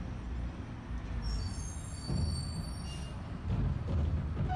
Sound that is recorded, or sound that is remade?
recorded